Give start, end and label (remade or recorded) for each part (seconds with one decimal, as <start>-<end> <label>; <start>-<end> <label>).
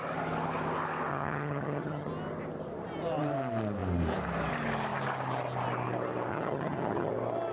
0.0-1.1 recorded; 1.1-2.1 remade; 2.1-6.3 recorded; 6.3-7.1 remade; 7.1-7.5 recorded